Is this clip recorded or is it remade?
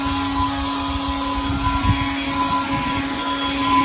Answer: recorded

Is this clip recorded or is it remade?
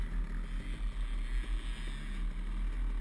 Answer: recorded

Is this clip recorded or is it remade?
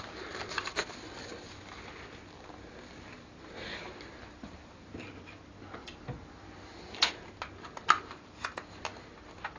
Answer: recorded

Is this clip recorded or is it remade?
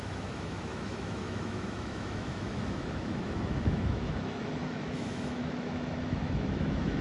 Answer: remade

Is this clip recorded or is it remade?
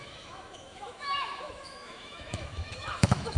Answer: remade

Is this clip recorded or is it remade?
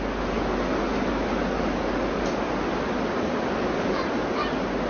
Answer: recorded